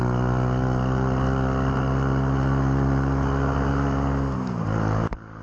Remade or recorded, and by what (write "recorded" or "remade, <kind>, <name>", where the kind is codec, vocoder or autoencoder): recorded